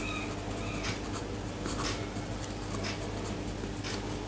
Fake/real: real